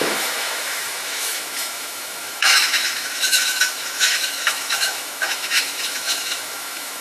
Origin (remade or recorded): remade